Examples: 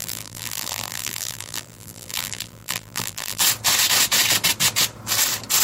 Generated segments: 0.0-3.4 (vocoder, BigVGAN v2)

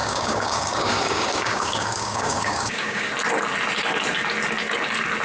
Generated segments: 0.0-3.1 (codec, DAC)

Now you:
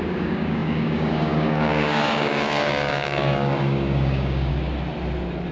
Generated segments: 0.0-4.5 (codec, DAC)

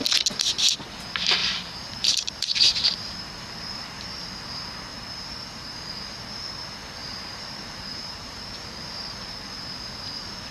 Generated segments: 1.4-4.5 (vocoder, BigVGAN v2); 4.9-6.0; 7.0-9.1